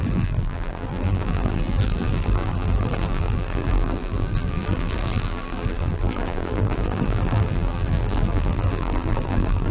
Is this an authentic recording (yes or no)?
no